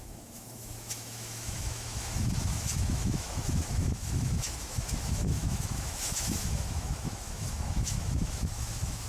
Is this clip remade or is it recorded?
remade